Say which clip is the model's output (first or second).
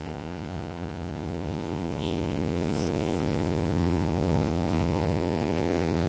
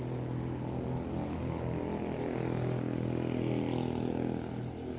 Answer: first